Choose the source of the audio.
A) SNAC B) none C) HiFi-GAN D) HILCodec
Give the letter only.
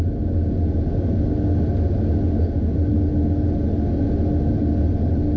B